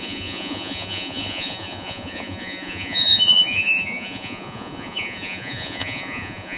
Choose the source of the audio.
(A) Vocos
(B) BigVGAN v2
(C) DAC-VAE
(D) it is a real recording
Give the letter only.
A